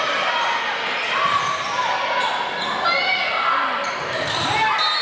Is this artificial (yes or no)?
no